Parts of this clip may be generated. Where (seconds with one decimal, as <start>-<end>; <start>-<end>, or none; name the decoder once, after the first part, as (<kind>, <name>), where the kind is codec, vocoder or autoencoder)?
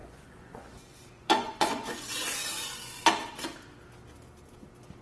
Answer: 0.0-3.0 (vocoder, Vocos)